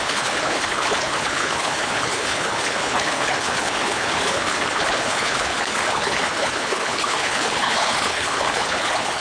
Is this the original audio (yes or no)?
no